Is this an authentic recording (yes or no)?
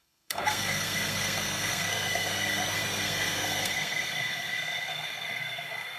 no